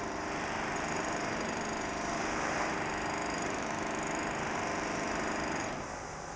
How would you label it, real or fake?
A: fake